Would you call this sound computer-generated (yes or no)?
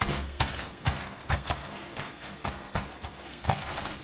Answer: yes